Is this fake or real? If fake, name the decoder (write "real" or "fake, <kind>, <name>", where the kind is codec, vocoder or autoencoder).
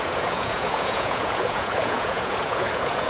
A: fake, vocoder, Vocos